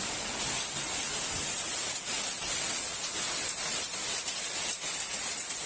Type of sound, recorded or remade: recorded